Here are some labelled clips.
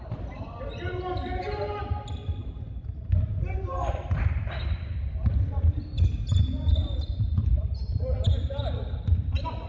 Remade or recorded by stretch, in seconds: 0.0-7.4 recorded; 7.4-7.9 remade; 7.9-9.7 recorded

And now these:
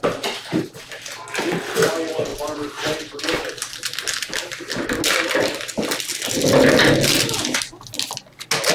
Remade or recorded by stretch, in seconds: 0.0-2.3 recorded; 2.3-3.2 remade; 3.2-8.7 recorded

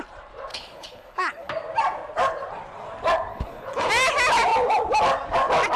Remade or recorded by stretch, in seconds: 0.0-0.5 recorded; 0.5-1.5 remade; 1.5-3.3 recorded; 3.3-3.9 remade; 3.9-5.8 recorded

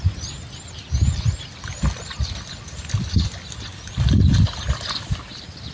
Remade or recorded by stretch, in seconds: 0.0-5.7 recorded